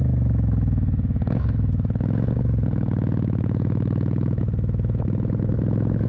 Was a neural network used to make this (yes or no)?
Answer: yes